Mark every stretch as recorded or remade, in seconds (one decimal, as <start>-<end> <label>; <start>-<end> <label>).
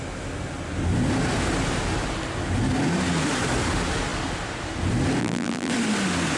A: 0.0-5.2 recorded; 5.2-5.7 remade; 5.7-6.4 recorded